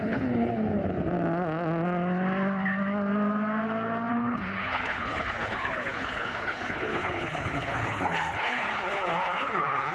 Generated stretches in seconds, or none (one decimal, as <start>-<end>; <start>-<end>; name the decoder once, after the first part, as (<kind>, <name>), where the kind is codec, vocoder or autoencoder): 0.0-0.8 (codec, HILCodec); 4.1-9.9